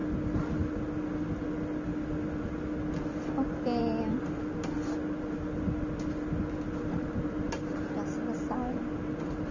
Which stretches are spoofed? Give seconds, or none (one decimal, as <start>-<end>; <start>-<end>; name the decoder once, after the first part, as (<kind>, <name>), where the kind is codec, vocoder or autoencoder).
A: none